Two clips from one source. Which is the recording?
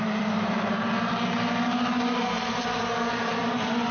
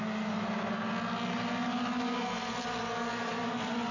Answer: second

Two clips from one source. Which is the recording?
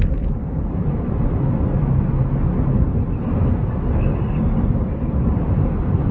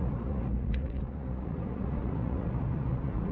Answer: first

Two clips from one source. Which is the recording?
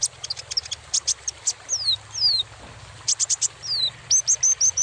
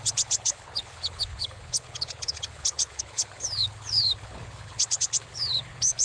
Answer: first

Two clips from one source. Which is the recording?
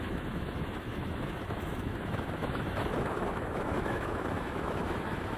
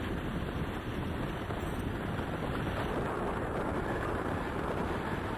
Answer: second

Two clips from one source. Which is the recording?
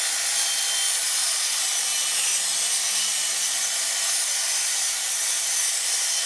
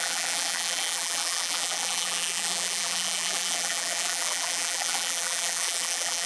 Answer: first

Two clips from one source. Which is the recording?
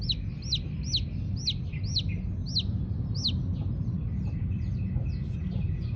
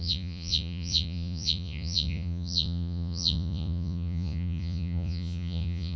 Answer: first